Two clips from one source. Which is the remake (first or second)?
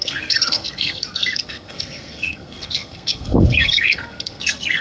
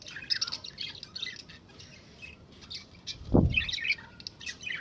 first